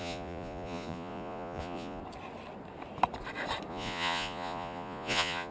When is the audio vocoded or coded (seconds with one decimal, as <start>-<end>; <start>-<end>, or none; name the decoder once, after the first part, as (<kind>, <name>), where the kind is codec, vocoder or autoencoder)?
0.0-2.0 (vocoder, Vocos); 3.7-5.5